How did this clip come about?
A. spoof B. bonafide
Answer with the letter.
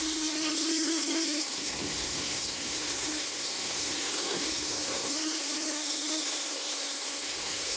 A